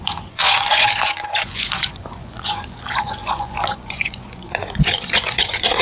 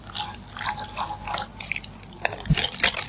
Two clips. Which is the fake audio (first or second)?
first